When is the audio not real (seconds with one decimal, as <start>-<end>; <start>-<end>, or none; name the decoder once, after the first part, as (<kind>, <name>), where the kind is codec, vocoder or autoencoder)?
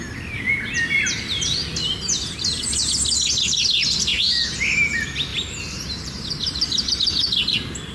4.1-4.6 (vocoder, BigVGAN v2); 5.3-6.9